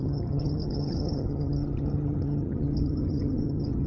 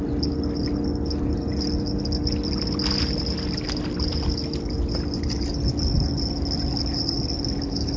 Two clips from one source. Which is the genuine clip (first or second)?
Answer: second